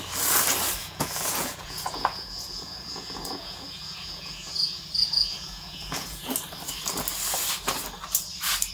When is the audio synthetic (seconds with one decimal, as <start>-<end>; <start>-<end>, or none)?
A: 0.8-4.8; 5.3-6.3